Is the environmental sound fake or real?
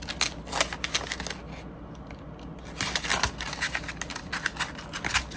real